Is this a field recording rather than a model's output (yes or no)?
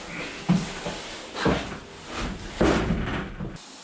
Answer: yes